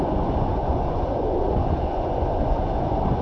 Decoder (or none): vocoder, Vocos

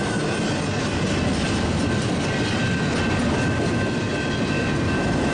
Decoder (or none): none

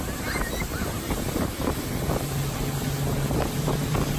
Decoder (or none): none